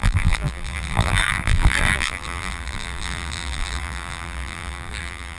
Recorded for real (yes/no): no